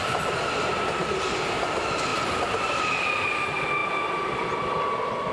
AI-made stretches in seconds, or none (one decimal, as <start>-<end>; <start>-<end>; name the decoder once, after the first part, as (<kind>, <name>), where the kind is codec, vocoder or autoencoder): 2.1-2.8 (vocoder, BigVGAN v2)